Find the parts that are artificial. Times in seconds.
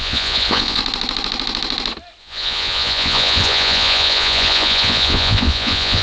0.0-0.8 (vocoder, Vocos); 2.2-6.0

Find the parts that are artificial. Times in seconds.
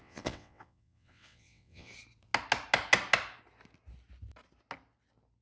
0.0-1.9 (vocoder, WaveNeXt)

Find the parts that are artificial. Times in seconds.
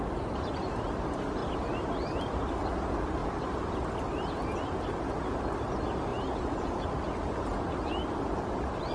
6.1-7.7 (vocoder, Vocos)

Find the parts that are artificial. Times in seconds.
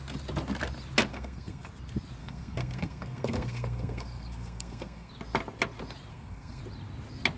1.1-1.7 (codec, SNAC); 2.2-5.1; 6.1-6.6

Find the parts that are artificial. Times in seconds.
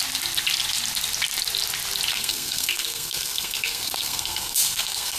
2.1-5.2 (codec, SNAC)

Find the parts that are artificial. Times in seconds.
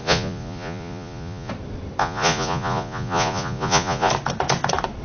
0.0-1.5 (vocoder, Vocos); 2.0-4.1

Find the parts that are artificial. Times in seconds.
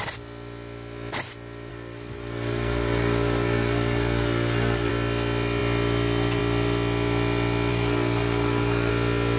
1.7-4.9 (codec, SNAC); 7.7-8.9